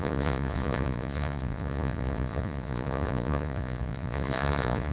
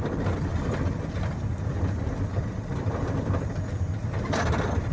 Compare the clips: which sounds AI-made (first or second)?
first